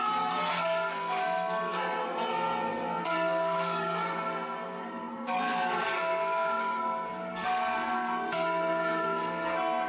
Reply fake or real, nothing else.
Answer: fake